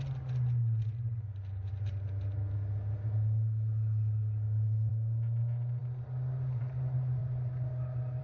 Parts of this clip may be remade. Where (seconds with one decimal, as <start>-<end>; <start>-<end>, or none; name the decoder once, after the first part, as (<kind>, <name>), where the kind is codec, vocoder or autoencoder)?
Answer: none